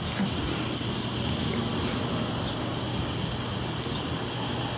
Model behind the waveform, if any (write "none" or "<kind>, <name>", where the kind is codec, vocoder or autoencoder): none